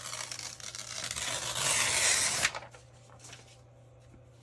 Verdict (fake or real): real